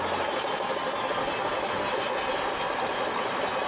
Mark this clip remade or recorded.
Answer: recorded